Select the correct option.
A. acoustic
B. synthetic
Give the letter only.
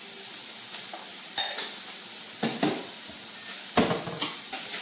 A